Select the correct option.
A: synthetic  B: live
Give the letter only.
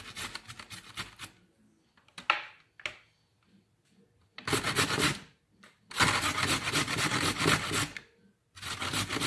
B